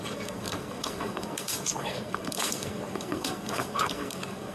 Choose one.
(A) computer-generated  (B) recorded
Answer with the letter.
A